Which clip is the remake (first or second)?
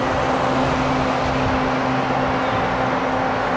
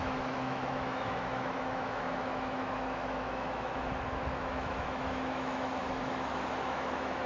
second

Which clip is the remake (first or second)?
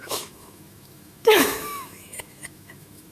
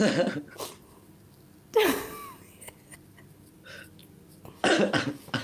first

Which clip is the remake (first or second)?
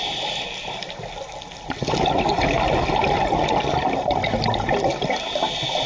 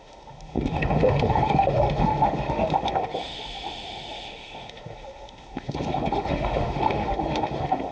second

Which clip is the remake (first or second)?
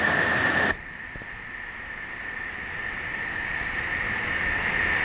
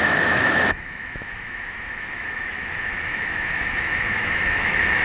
second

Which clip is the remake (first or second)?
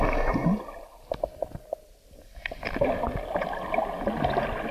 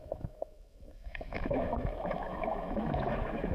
second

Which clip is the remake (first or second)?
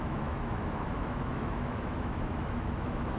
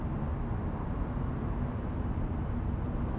first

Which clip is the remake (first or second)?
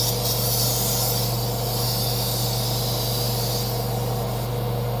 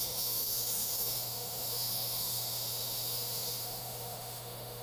second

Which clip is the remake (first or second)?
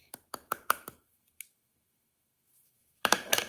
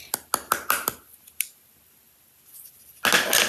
first